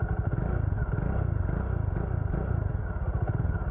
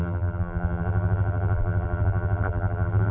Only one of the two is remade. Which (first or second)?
second